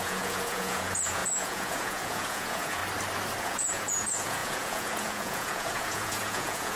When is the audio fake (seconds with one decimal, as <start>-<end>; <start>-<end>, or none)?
0.0-2.8; 3.4-6.8